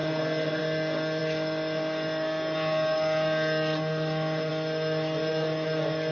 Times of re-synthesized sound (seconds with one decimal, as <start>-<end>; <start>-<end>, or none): none